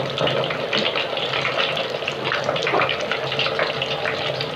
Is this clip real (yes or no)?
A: yes